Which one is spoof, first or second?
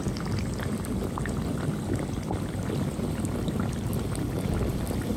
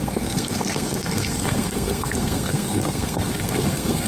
second